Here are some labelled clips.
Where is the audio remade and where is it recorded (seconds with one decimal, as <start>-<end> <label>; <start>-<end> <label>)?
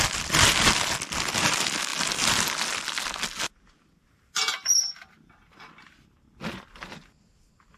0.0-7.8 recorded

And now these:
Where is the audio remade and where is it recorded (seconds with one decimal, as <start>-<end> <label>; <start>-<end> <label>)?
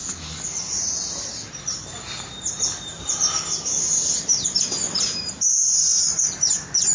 0.0-6.9 recorded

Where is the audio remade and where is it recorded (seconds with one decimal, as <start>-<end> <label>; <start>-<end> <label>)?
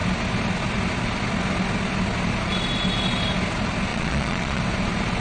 0.0-3.9 recorded; 3.9-4.6 remade; 4.6-5.2 recorded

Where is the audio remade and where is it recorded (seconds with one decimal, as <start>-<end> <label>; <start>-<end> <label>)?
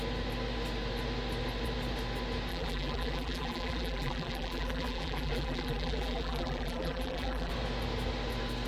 0.0-2.5 recorded; 2.5-7.5 remade; 7.5-8.7 recorded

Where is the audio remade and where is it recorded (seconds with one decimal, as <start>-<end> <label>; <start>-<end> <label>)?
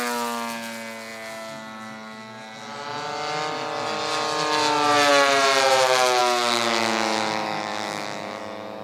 0.0-6.2 recorded; 6.2-8.4 remade; 8.4-8.8 recorded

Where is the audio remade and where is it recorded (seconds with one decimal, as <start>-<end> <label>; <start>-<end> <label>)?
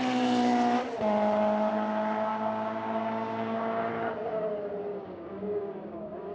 0.0-2.3 recorded; 2.3-3.9 remade; 3.9-4.9 recorded; 4.9-6.3 remade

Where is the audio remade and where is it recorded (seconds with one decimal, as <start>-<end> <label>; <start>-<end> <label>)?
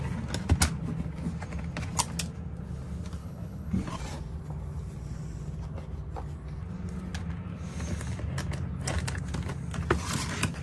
0.0-3.2 recorded; 3.2-3.7 remade; 3.7-10.6 recorded